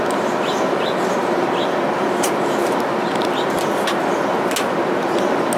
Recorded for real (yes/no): yes